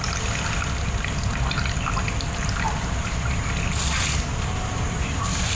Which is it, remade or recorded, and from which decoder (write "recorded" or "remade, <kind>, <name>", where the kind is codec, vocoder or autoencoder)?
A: recorded